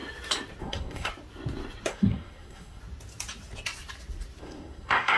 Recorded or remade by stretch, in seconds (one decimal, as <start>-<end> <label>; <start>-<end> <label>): 0.0-0.6 recorded; 0.6-1.1 remade; 1.1-1.9 recorded; 1.9-2.8 remade; 2.8-4.4 recorded; 4.4-5.2 remade